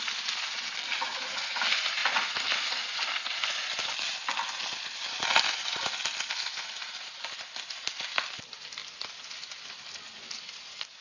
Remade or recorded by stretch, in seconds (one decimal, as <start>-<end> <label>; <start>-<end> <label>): 0.0-11.0 recorded